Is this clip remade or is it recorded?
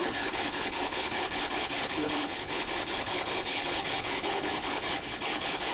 remade